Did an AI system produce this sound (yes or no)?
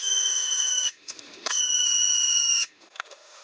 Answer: yes